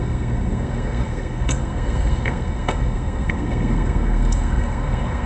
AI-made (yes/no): yes